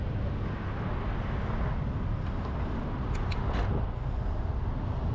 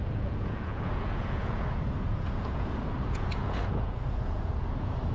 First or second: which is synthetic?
second